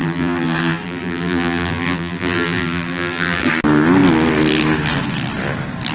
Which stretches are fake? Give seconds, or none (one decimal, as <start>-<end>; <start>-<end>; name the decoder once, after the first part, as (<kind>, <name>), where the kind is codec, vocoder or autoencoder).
0.0-3.5 (vocoder, BigVGAN v2)